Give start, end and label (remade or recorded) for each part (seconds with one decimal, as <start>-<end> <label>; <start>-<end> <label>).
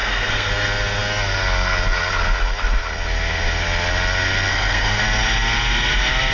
0.0-0.5 remade; 0.5-4.5 recorded; 4.5-5.0 remade; 5.0-6.3 recorded